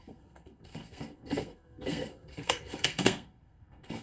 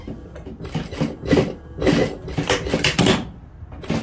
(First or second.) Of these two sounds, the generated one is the first